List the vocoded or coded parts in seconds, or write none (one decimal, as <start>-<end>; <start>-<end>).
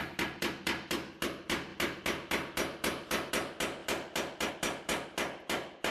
none